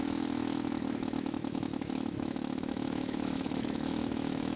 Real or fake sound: fake